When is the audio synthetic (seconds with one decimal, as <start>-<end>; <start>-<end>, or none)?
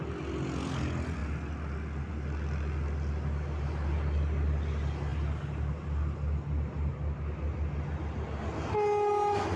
none